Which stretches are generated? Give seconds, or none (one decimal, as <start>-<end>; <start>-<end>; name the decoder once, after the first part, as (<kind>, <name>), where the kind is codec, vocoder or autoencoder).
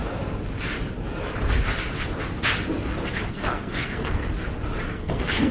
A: 3.3-4.2 (codec, SNAC); 4.9-5.5